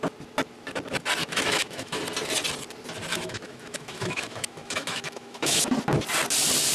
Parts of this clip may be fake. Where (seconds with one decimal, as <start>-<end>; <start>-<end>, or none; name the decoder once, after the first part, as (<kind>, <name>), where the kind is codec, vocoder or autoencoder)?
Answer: 1.2-2.0 (autoencoder, DAC-VAE); 3.1-5.7